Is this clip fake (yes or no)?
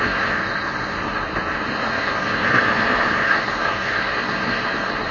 yes